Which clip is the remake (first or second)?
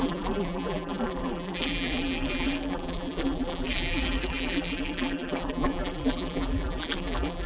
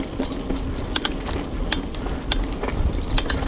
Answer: first